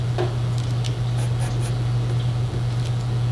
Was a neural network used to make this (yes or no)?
no